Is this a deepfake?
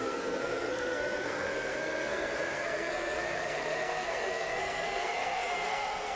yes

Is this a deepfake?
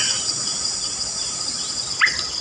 no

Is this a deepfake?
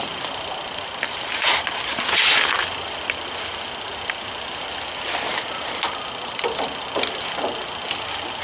no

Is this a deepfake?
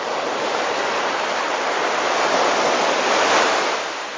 no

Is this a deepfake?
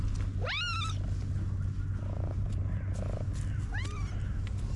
no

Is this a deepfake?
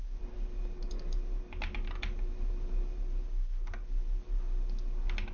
no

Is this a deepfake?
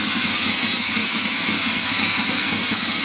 yes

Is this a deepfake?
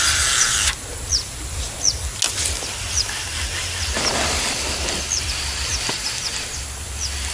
no